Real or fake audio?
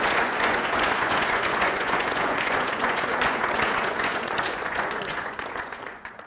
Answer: fake